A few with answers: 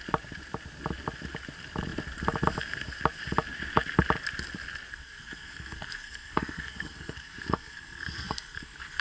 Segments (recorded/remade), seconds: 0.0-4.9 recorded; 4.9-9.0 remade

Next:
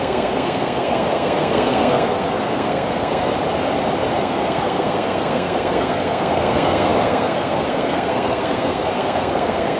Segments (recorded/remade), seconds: 0.0-3.3 remade; 3.3-4.1 recorded; 4.1-9.8 remade

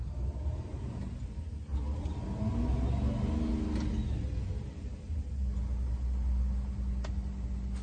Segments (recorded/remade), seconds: 0.0-7.8 recorded

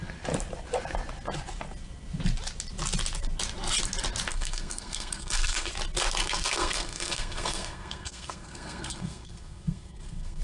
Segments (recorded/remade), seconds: 0.0-4.3 recorded; 4.3-5.7 remade; 5.7-6.2 recorded; 6.2-10.4 remade